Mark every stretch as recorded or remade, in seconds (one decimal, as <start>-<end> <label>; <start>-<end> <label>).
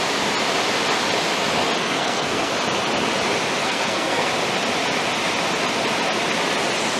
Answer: 0.0-1.8 recorded; 1.8-2.5 remade; 2.5-3.6 recorded; 3.6-4.3 remade; 4.3-7.0 recorded